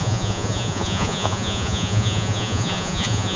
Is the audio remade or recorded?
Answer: remade